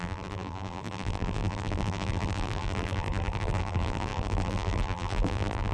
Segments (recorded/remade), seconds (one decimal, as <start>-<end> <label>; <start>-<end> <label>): 0.0-5.7 remade